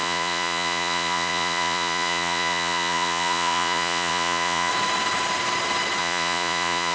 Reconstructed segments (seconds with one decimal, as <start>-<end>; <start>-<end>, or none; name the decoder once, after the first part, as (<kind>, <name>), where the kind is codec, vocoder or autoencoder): 0.0-4.7 (vocoder, Vocos); 6.0-6.9